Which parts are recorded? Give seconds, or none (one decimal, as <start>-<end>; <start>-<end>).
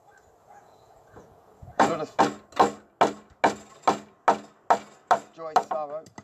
0.0-0.4; 2.2-6.2